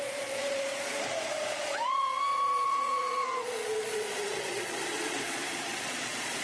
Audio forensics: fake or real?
fake